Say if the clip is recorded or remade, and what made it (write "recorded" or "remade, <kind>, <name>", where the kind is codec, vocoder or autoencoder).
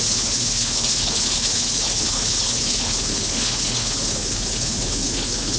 remade, codec, HILCodec